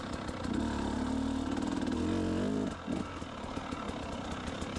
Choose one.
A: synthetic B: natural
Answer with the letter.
B